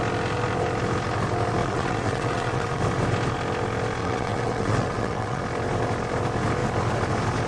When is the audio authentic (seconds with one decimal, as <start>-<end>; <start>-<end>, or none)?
0.0-1.6; 2.8-4.0; 5.4-7.5